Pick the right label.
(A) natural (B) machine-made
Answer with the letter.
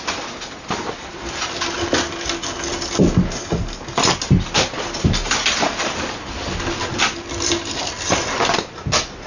A